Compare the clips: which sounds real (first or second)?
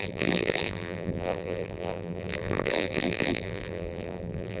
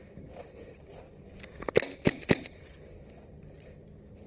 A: second